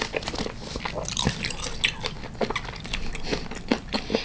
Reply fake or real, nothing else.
real